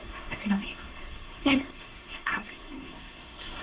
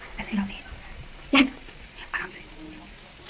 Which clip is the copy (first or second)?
first